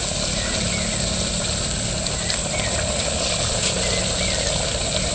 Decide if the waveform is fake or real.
real